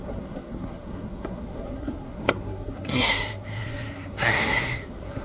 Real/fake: fake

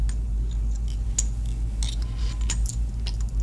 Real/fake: real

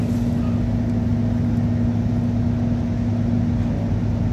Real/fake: real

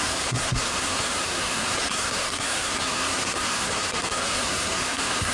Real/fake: fake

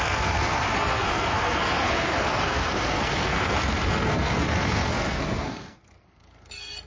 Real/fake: fake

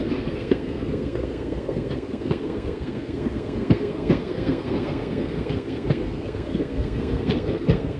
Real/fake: fake